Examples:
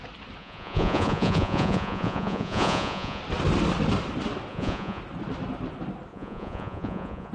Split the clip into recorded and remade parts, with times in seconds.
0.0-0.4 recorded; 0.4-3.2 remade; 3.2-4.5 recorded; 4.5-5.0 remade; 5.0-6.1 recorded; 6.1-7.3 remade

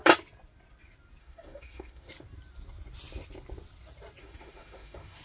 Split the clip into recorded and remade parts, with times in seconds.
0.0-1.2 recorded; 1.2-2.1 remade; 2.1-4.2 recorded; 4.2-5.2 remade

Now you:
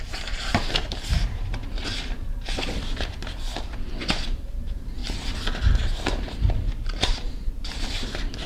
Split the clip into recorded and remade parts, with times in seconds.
0.0-1.6 remade; 1.6-3.6 recorded; 3.6-5.0 remade; 5.0-6.5 recorded; 6.5-8.5 remade